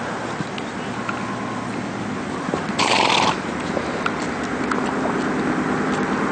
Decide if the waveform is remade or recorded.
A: recorded